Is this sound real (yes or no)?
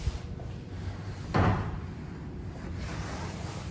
yes